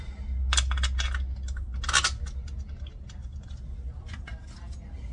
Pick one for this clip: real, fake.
real